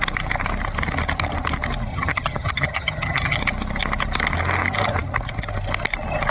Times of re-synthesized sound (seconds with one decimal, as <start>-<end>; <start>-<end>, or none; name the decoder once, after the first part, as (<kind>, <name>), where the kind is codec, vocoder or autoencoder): 1.9-3.4 (vocoder, HiFi-GAN)